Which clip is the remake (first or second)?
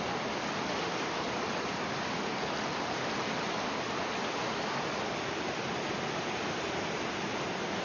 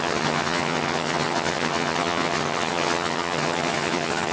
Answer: second